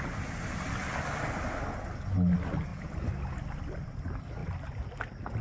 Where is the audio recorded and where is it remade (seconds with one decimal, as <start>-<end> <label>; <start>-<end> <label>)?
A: 0.0-2.7 recorded; 2.7-3.3 remade; 3.3-5.4 recorded